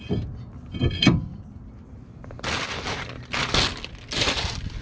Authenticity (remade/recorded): recorded